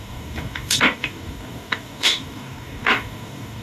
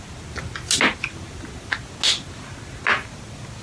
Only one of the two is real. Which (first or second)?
second